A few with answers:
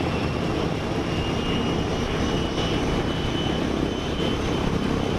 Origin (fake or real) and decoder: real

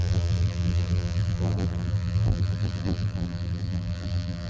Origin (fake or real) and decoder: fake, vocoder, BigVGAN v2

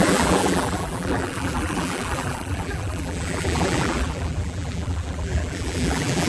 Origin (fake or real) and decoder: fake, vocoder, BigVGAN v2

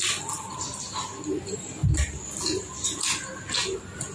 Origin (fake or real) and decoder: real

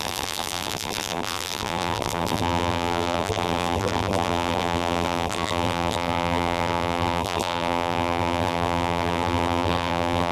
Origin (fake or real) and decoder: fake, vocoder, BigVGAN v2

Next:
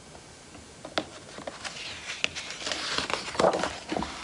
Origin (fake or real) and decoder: real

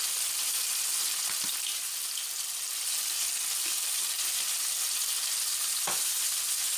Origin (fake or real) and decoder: real